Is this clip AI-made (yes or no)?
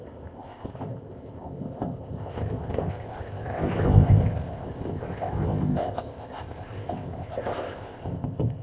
yes